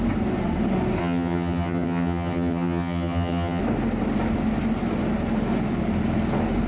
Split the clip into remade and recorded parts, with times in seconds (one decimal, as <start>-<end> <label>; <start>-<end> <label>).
0.0-1.0 recorded; 1.0-3.6 remade; 3.6-6.7 recorded